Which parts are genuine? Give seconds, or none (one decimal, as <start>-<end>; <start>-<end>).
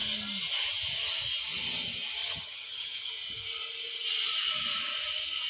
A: 0.0-2.2; 3.1-5.5